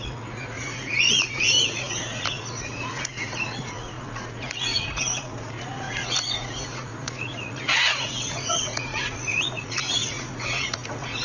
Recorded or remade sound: remade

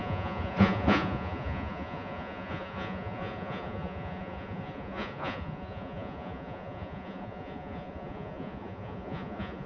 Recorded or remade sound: remade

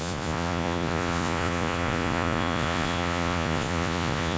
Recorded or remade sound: remade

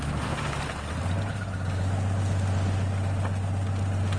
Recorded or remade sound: recorded